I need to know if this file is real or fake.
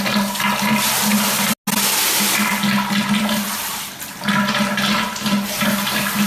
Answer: real